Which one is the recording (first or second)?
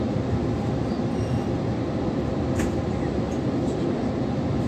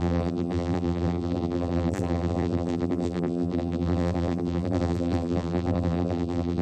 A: first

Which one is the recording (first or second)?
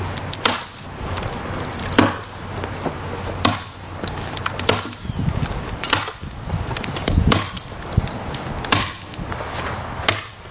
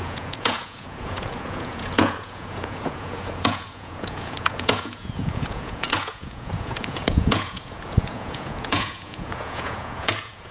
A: first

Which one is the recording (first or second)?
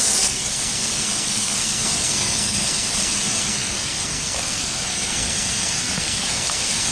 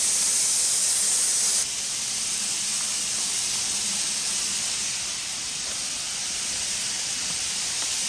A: second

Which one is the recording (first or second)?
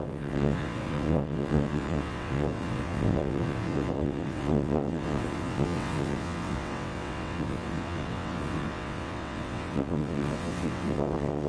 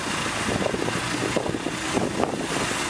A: second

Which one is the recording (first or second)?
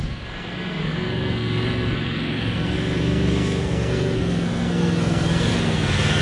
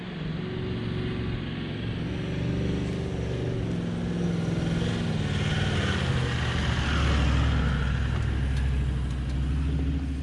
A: second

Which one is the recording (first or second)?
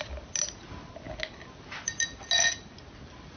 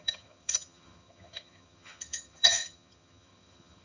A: first